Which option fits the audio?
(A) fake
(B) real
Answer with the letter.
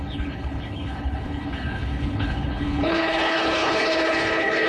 A